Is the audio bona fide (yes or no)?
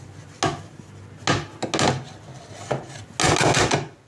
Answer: yes